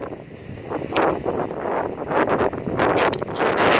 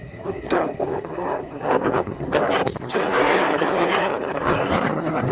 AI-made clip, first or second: second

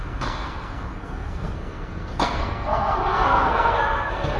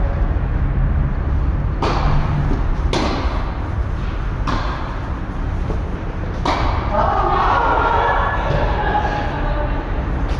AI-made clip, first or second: first